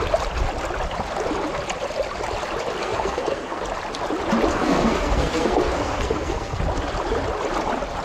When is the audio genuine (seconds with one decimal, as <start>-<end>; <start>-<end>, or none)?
0.0-2.8; 3.6-4.5; 6.6-8.0